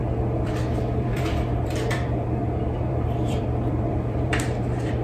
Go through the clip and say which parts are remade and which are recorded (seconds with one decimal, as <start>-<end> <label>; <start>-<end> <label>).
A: 0.0-2.4 remade; 2.4-2.9 recorded; 2.9-5.0 remade